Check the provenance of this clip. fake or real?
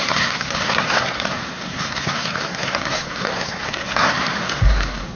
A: fake